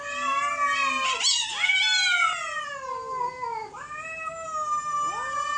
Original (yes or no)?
yes